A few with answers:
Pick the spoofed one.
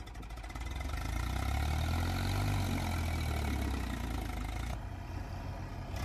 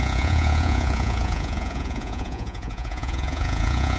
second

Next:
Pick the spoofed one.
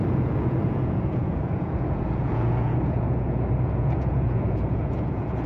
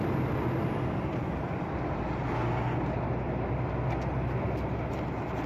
first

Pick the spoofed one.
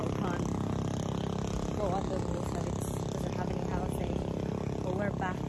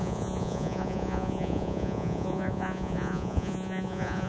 second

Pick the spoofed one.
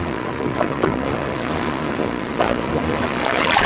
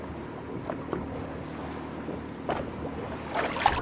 first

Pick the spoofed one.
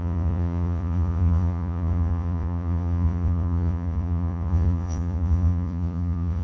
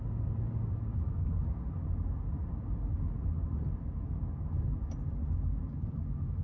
first